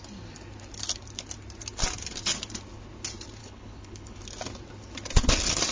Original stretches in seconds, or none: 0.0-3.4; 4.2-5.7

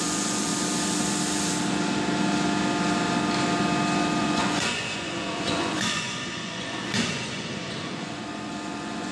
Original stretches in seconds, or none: 0.5-4.2

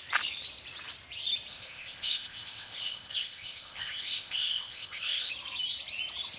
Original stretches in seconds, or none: 0.0-1.5; 5.3-6.4

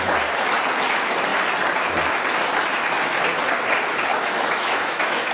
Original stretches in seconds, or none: 0.0-4.1

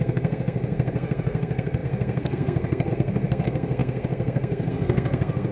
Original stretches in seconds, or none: none

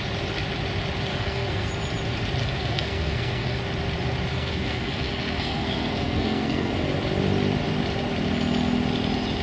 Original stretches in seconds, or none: 0.0-1.1; 1.7-2.4; 3.6-4.3; 6.7-9.4